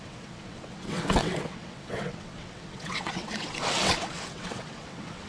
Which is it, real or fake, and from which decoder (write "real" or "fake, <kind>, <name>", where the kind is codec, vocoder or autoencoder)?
fake, vocoder, WaveNeXt